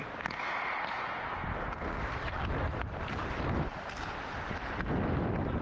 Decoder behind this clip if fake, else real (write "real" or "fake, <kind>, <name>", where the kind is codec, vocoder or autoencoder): real